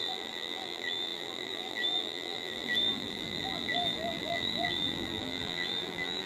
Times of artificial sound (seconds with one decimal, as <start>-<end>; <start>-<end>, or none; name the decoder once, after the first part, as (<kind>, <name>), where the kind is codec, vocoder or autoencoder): 0.0-6.3 (vocoder, BigVGAN v2)